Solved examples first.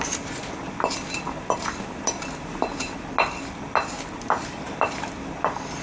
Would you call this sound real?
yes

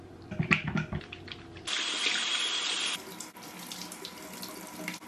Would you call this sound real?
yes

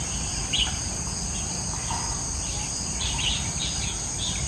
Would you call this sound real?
yes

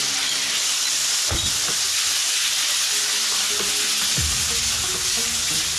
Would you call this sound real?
yes